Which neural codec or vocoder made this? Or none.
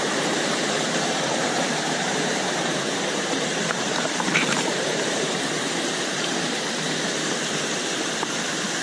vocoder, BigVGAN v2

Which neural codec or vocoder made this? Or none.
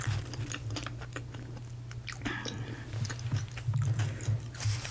none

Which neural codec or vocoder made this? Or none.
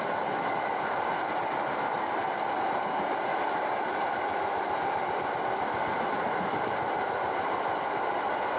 none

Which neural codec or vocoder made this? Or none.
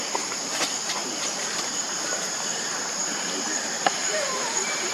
vocoder, BigVGAN v2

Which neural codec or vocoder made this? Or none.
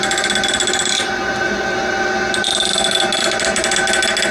none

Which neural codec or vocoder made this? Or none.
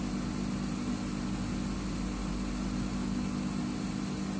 none